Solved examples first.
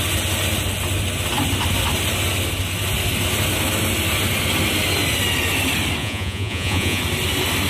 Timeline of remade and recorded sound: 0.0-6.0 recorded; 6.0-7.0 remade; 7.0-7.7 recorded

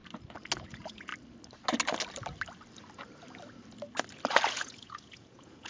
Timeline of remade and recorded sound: 0.0-0.6 recorded; 0.6-1.1 remade; 1.1-4.5 recorded; 4.5-5.7 remade

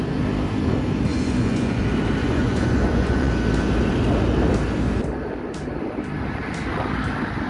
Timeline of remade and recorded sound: 0.0-1.1 recorded; 1.1-1.8 remade; 1.8-2.2 recorded; 2.2-3.3 remade; 3.3-7.5 recorded